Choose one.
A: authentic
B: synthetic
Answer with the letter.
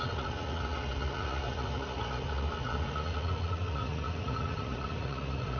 B